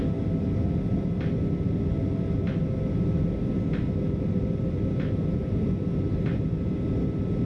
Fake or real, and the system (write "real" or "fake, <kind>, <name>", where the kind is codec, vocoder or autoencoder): real